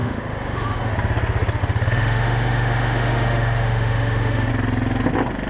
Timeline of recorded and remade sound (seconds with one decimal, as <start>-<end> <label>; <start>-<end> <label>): 0.0-0.9 remade; 0.9-1.6 recorded; 1.6-4.5 remade; 4.5-5.5 recorded